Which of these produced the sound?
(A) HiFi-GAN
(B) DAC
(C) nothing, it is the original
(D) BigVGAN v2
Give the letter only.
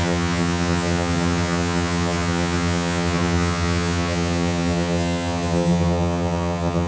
A